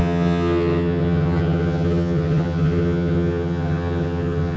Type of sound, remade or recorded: remade